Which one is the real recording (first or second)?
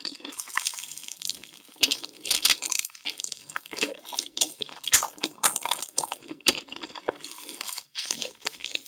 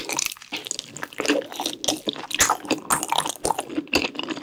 second